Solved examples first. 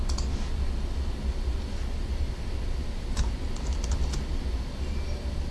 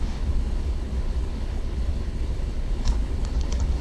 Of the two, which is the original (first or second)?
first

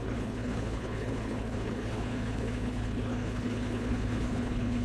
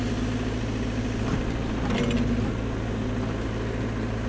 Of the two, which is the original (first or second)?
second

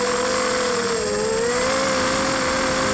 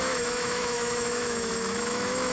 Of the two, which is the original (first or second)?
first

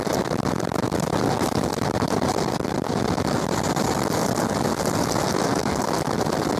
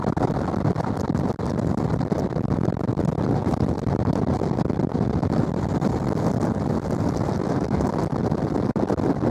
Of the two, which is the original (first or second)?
first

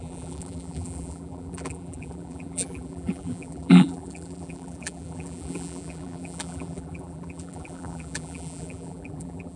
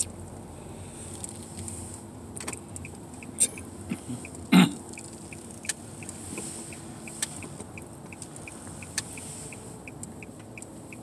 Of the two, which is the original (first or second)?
second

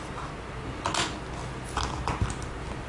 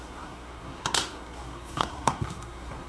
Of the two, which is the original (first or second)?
first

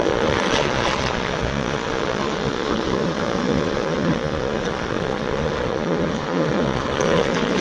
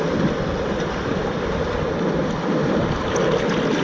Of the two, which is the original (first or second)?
second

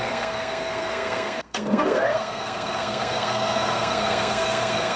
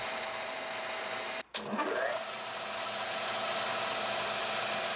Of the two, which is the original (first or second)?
second